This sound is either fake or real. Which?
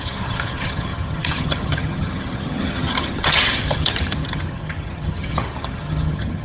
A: fake